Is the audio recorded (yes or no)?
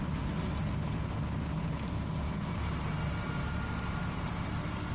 yes